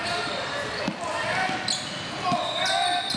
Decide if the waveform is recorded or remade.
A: recorded